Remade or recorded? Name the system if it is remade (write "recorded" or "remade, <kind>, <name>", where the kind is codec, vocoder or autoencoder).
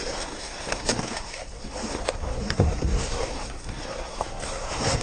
remade, codec, SNAC